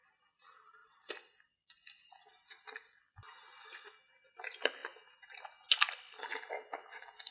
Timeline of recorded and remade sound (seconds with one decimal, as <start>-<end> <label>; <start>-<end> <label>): 0.0-7.3 recorded